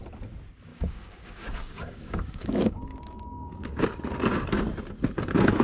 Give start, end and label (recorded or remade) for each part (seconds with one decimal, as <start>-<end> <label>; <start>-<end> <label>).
0.0-0.7 recorded; 0.7-4.1 remade; 4.1-5.6 recorded